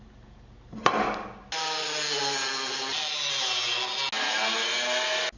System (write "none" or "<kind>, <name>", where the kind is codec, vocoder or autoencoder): none